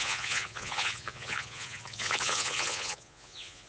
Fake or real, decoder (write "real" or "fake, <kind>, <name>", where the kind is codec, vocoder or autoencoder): fake, vocoder, Vocos